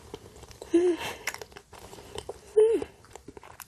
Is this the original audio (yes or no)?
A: no